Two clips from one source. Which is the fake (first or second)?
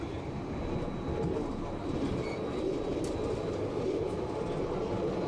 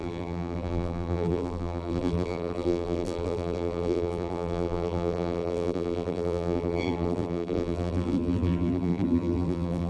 second